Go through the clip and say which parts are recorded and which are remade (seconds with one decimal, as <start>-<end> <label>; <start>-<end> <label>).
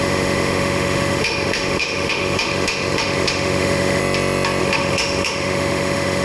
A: 0.0-4.0 remade; 4.0-4.6 recorded; 4.6-6.2 remade